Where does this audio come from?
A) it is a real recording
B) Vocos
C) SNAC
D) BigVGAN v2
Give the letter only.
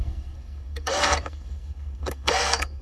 C